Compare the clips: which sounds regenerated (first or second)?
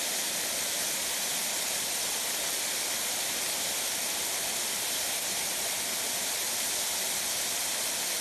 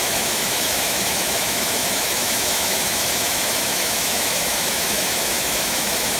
second